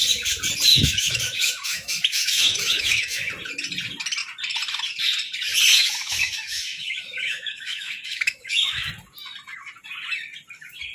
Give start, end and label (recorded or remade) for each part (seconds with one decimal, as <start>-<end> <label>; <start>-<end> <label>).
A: 0.0-0.7 recorded; 0.7-3.3 remade; 3.3-5.7 recorded; 5.7-8.9 remade; 8.9-10.9 recorded